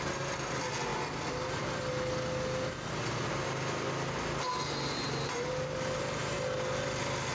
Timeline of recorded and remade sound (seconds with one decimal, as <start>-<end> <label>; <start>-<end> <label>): 0.0-7.3 recorded